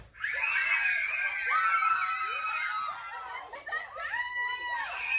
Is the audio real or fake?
real